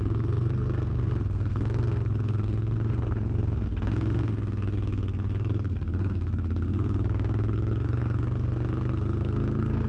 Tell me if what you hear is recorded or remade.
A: remade